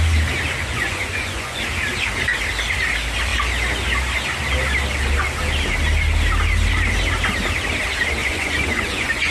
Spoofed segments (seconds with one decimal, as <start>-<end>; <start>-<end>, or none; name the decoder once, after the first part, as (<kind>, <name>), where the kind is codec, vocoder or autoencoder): 0.6-1.6 (vocoder, Vocos); 8.2-9.3